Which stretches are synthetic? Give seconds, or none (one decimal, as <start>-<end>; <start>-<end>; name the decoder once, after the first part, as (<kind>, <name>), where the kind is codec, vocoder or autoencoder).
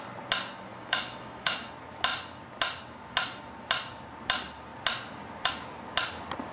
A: 0.7-1.7 (autoencoder, DAC-VAE)